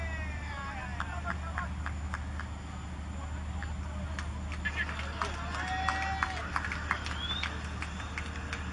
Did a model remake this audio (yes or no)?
no